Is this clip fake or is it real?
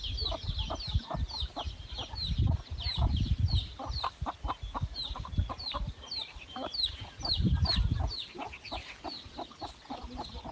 real